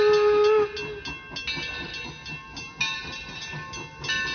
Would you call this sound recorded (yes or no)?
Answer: yes